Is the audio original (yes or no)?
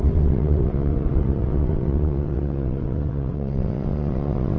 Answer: no